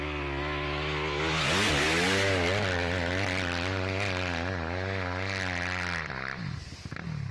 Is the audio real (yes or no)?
yes